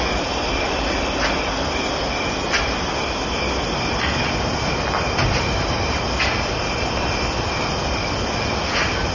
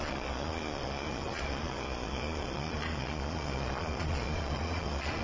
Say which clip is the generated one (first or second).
second